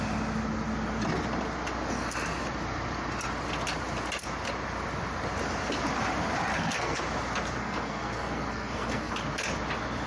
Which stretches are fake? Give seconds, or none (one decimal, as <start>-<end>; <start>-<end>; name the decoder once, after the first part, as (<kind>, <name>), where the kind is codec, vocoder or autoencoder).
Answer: 6.5-7.0 (codec, SNAC); 7.6-9.1